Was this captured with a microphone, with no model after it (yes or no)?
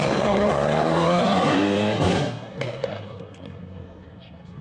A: no